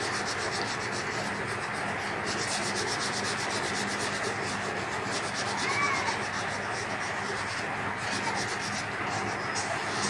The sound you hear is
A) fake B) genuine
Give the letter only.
B